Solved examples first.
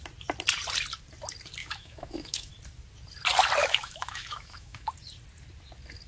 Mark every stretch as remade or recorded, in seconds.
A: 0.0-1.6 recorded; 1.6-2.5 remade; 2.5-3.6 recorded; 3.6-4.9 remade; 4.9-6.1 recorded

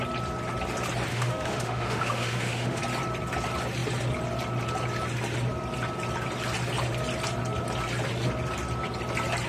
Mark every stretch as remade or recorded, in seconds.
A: 0.0-1.1 recorded; 1.1-2.8 remade; 2.8-9.5 recorded

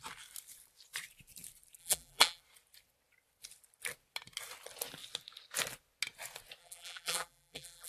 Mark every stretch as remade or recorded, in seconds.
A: 0.0-1.8 recorded; 1.8-2.4 remade; 2.4-6.6 recorded; 6.6-7.9 remade